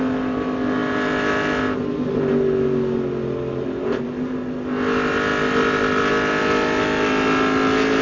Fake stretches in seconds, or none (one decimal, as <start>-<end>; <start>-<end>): none